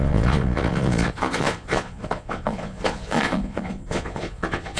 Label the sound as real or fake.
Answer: fake